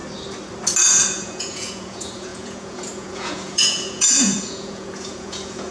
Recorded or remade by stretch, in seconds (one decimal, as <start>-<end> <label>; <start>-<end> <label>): 0.0-0.9 recorded; 0.9-5.7 remade